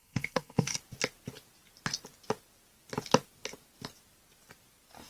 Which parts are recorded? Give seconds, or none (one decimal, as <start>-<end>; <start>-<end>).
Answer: 0.8-5.1